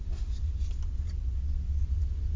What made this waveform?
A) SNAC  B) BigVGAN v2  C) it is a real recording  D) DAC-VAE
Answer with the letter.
C